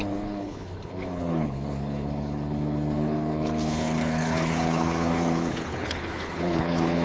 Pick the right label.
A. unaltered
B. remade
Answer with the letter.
B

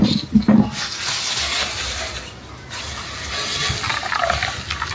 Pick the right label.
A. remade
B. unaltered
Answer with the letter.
B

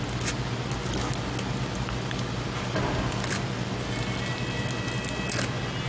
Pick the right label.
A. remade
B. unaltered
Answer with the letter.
B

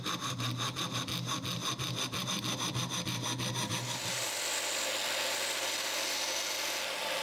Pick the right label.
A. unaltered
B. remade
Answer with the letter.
A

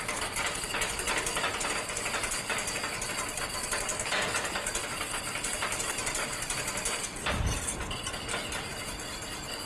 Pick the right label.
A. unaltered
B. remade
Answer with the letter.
A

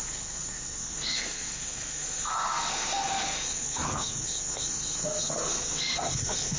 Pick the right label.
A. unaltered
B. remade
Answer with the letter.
B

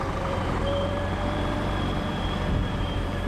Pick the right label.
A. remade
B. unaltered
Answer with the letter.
A